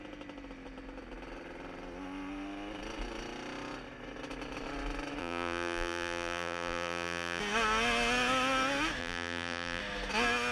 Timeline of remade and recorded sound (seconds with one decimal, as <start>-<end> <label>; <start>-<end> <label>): 0.0-5.2 recorded; 5.2-7.4 remade; 7.4-9.0 recorded; 9.0-9.8 remade; 9.8-10.5 recorded